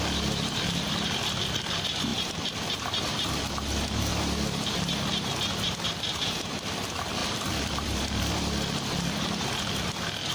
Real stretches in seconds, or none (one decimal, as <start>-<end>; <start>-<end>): 0.0-2.1; 2.8-7.2; 8.3-10.3